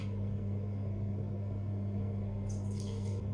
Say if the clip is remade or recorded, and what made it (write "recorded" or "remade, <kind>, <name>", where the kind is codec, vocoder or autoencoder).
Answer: remade, codec, SNAC